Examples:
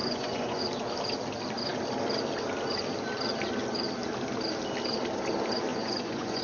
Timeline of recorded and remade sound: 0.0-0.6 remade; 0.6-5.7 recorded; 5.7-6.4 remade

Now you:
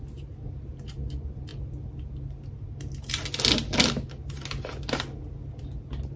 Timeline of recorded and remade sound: 0.0-6.2 recorded